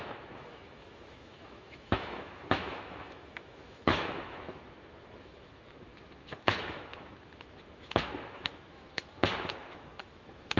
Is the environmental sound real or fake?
fake